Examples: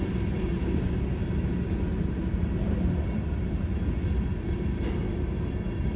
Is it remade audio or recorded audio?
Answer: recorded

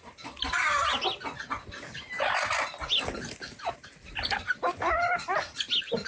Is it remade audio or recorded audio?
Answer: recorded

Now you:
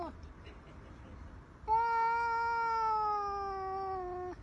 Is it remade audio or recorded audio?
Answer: recorded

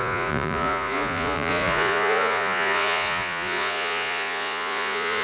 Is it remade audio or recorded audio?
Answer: remade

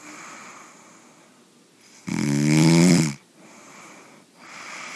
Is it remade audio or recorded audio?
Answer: recorded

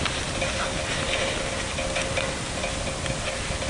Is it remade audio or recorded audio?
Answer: recorded